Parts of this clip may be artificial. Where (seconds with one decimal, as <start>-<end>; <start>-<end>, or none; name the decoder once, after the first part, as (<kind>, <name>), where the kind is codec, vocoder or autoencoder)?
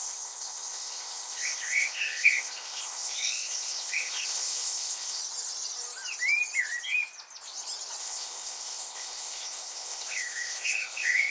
0.0-5.2 (codec, ZipCodec); 8.0-11.3